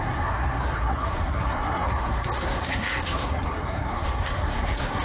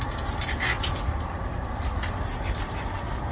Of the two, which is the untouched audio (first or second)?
second